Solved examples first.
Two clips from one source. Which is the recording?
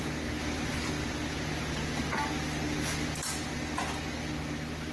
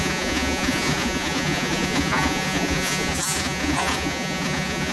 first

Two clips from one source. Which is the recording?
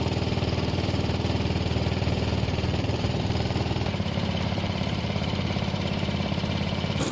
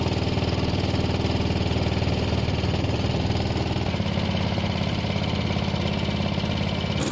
second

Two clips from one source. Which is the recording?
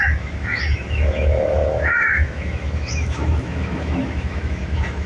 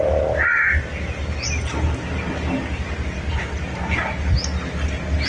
second